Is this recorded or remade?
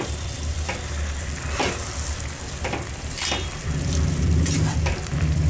remade